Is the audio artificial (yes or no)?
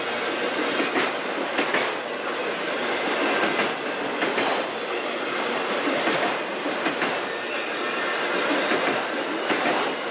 no